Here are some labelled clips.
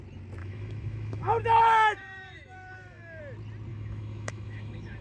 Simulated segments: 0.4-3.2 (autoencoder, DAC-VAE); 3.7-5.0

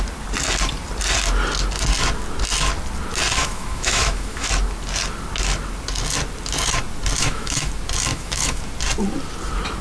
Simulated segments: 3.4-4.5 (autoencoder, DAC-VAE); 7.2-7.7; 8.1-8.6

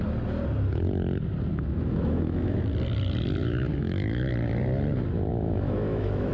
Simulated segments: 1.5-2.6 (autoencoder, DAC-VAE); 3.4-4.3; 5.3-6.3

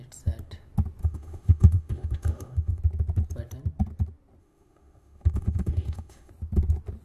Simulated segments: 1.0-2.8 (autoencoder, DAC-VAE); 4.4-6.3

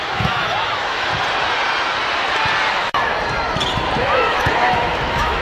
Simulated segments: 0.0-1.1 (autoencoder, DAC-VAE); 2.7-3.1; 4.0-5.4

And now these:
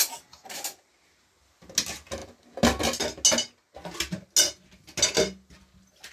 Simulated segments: none

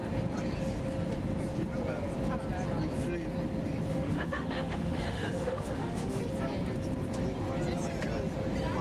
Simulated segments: 3.9-6.2 (autoencoder, DAC-VAE)